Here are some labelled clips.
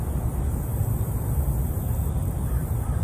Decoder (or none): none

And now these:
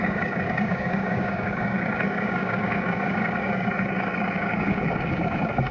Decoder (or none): codec, DAC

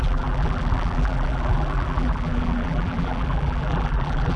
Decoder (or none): vocoder, BigVGAN v2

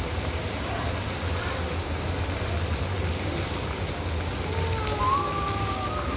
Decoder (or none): none